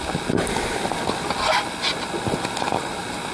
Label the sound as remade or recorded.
recorded